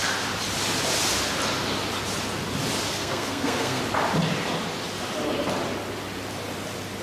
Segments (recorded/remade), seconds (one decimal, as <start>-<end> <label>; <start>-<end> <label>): 0.0-2.9 recorded; 2.9-3.8 remade; 3.8-7.0 recorded